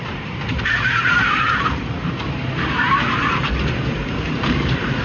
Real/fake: fake